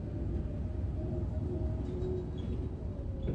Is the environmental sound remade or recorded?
recorded